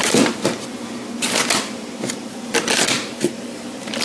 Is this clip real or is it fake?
real